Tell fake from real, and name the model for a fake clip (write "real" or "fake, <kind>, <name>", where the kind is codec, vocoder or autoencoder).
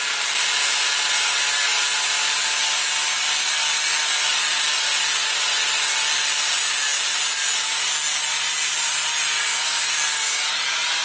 real